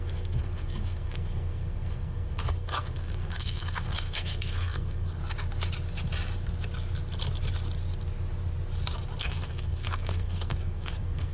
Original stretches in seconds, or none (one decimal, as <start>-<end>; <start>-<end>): 5.2-9.2